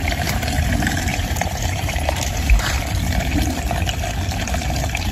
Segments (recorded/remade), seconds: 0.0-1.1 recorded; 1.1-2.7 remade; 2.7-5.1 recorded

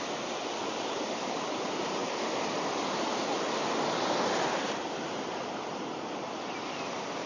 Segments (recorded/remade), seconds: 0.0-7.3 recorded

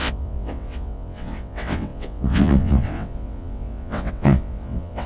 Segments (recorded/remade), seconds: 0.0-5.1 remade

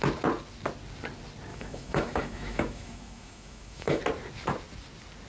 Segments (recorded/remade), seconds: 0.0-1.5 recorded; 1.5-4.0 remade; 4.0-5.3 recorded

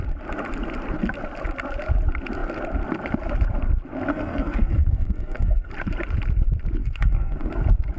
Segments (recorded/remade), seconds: 0.0-4.1 recorded; 4.1-5.7 remade; 5.7-6.8 recorded; 6.8-7.5 remade; 7.5-8.0 recorded

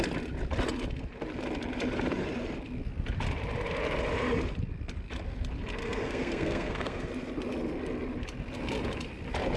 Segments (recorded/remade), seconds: 0.0-5.8 recorded; 5.8-7.1 remade; 7.1-9.6 recorded

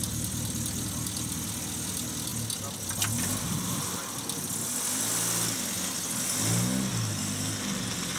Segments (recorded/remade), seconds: 0.0-8.2 recorded